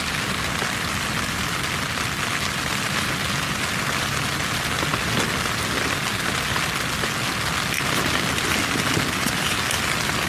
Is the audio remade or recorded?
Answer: recorded